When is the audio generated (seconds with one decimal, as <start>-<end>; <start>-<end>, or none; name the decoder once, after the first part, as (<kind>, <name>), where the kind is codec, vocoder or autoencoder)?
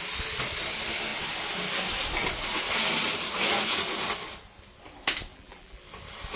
5.3-5.8 (vocoder, BigVGAN v2)